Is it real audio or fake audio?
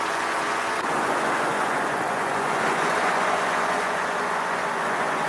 fake